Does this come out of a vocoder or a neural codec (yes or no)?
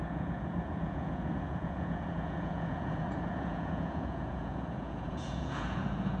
yes